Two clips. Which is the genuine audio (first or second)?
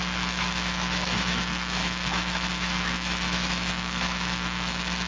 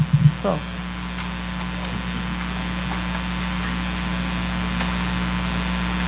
second